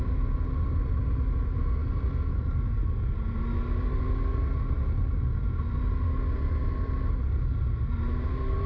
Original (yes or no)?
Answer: yes